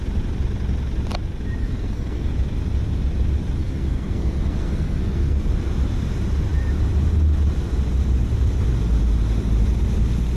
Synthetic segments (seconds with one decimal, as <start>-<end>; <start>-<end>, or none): 1.6-2.3; 3.6-5.5